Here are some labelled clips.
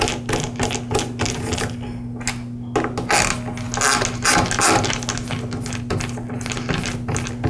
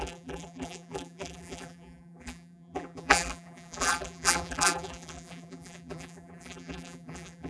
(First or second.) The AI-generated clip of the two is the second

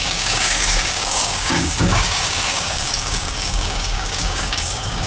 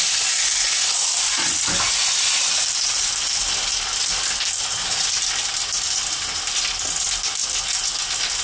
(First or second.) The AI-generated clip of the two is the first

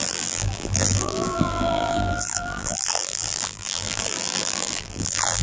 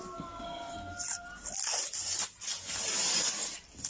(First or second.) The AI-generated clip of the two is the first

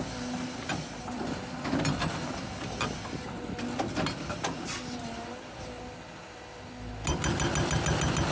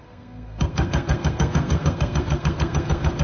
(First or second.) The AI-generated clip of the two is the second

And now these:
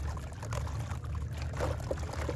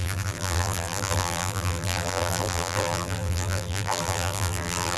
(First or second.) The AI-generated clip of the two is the second